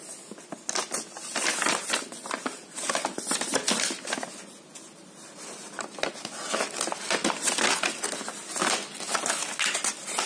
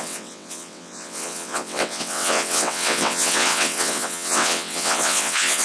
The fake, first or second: second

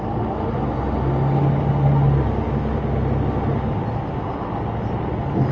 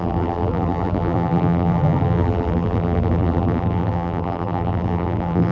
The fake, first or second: second